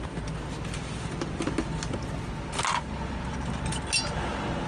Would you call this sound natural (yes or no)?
yes